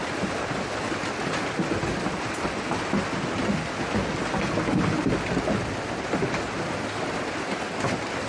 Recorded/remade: recorded